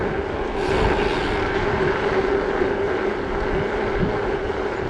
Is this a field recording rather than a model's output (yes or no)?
yes